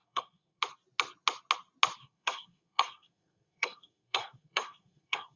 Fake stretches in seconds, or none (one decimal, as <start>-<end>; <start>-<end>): 0.0-0.6; 2.0-5.4